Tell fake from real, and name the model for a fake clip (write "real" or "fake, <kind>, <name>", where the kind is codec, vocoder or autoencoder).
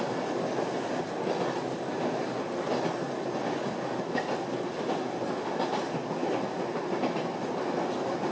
real